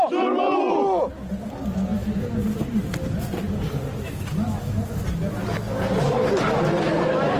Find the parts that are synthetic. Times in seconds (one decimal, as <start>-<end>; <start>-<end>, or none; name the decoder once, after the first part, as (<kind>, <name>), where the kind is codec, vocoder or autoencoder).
none